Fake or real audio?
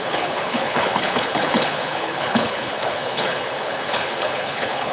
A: fake